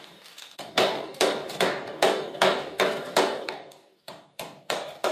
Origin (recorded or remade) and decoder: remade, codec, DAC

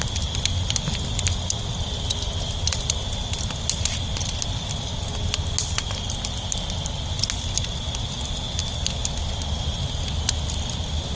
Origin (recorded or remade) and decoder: recorded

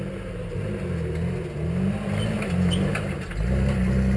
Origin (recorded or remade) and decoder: recorded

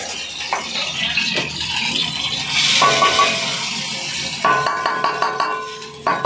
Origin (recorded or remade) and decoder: recorded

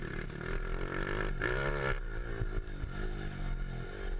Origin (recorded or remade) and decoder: recorded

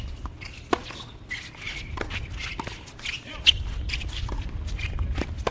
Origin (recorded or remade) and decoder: recorded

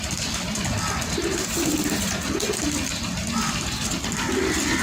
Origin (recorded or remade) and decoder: recorded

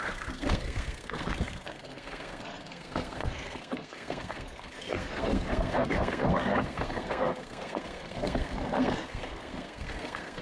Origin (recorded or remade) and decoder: remade, codec, SNAC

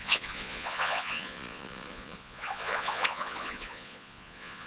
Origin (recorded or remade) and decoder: remade, vocoder, Vocos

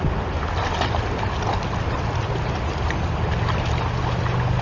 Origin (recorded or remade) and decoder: recorded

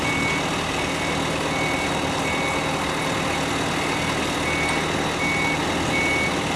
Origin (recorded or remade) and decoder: recorded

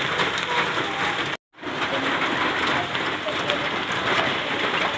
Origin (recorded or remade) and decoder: recorded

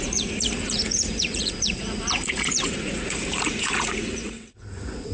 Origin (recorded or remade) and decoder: remade, vocoder, Vocos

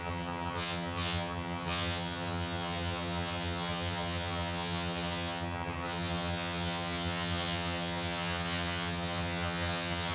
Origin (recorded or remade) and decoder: remade, vocoder, HiFi-GAN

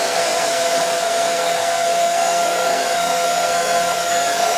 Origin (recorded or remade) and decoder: remade, codec, SNAC